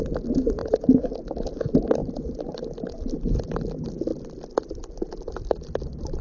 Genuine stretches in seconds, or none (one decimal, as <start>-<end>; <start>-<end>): 0.0-0.6; 1.2-2.0; 3.3-6.2